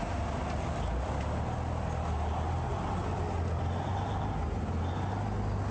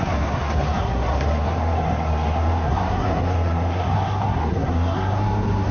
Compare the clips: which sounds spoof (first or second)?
second